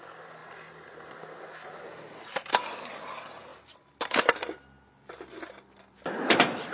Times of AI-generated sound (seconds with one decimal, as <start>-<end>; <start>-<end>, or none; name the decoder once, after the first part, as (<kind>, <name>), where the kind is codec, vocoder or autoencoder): none